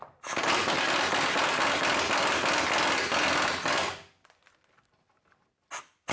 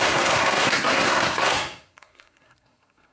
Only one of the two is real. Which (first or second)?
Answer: first